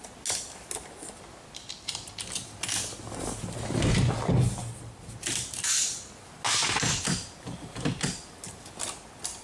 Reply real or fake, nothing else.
real